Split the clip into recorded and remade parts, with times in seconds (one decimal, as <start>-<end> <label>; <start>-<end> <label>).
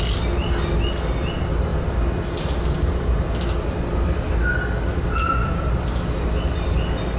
0.0-5.4 recorded; 5.4-6.0 remade; 6.0-7.2 recorded